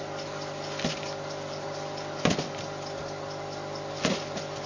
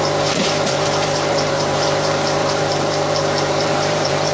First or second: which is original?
first